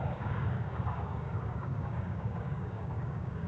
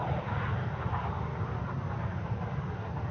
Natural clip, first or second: second